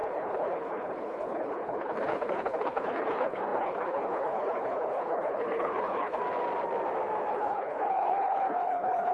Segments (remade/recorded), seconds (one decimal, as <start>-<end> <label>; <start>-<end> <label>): 0.0-6.2 remade; 6.2-7.3 recorded; 7.3-9.1 remade